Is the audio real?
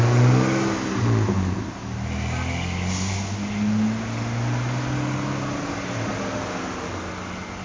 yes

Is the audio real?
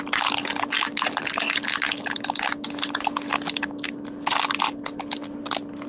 yes